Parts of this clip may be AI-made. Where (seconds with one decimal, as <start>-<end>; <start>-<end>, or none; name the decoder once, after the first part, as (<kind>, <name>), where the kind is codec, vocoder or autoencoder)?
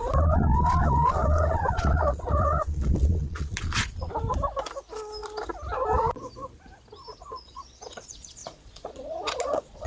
0.0-4.1 (vocoder, Vocos); 7.2-9.9